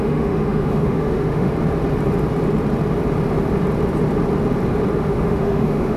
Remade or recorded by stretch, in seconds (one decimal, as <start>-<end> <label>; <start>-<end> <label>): 0.0-1.5 remade; 1.5-5.0 recorded; 5.0-6.0 remade